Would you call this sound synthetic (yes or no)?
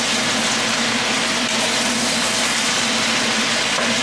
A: no